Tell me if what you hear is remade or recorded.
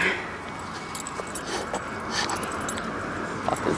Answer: recorded